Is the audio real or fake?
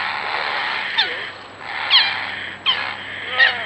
real